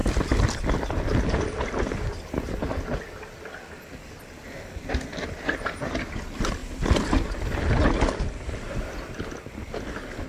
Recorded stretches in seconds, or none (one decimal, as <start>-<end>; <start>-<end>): 0.0-10.3